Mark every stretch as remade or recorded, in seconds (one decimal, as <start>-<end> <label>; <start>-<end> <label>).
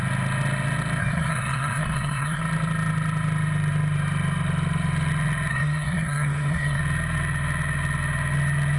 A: 0.0-1.0 recorded; 1.0-2.4 remade; 2.4-5.5 recorded; 5.5-6.8 remade; 6.8-8.8 recorded